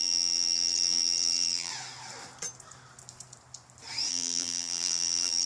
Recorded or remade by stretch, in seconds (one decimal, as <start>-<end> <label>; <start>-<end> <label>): 0.0-1.7 remade; 1.7-4.1 recorded; 4.1-5.5 remade